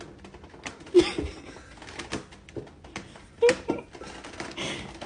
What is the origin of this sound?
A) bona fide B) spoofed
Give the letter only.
A